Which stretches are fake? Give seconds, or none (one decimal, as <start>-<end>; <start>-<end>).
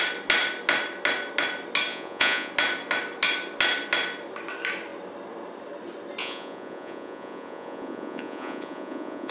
1.9-2.5; 6.2-9.3